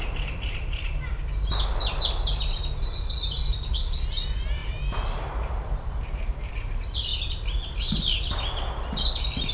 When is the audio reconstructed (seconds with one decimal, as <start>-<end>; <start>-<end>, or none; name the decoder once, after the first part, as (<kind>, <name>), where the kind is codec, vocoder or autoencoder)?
0.0-7.1 (vocoder, BigVGAN v2)